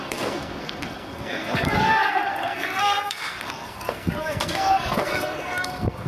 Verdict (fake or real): fake